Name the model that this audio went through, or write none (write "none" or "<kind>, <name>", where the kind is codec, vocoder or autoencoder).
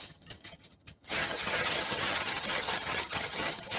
vocoder, HiFi-GAN